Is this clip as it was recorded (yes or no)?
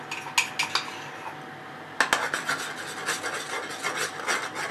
yes